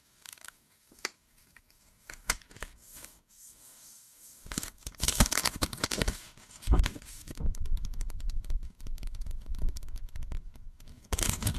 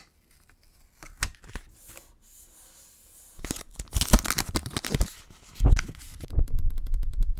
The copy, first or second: first